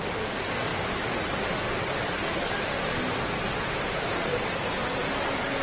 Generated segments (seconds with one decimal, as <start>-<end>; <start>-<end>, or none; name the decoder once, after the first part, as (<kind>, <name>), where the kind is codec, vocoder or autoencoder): 0.7-1.4 (vocoder, BigVGAN v2)